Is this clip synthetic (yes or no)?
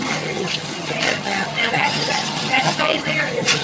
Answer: yes